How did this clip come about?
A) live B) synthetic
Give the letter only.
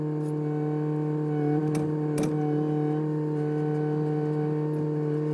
A